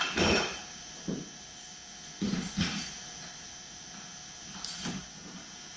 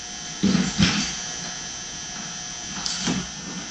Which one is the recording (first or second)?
second